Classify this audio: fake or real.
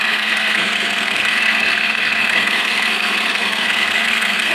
fake